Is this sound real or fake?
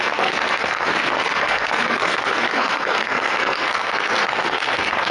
fake